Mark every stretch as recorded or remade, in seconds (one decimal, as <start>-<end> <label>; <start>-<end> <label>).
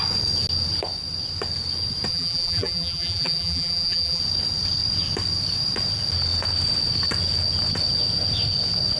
0.0-2.1 recorded; 2.1-4.2 remade; 4.2-9.0 recorded